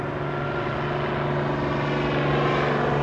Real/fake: real